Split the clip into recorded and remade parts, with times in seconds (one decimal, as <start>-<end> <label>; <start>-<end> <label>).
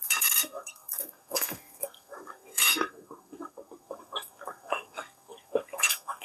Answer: 0.0-6.2 remade